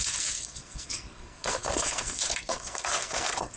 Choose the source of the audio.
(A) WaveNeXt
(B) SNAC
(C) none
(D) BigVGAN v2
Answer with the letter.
B